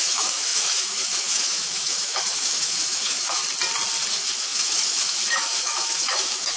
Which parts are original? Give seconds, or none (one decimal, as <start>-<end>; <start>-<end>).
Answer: 3.4-4.1